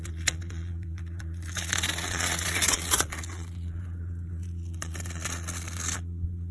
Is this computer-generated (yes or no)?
yes